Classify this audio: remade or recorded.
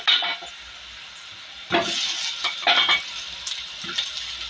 recorded